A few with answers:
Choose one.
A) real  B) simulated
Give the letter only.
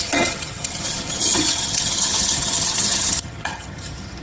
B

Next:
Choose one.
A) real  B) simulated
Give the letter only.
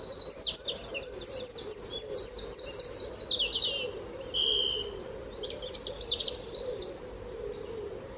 A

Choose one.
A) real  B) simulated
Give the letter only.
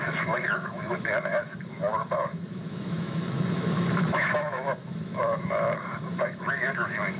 B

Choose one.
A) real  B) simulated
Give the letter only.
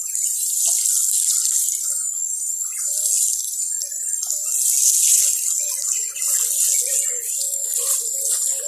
A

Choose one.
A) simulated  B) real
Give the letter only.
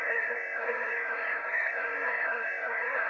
A